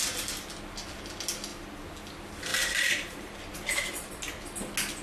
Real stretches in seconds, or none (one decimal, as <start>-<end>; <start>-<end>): 0.0-2.5; 4.1-5.0